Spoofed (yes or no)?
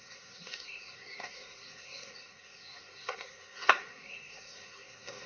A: yes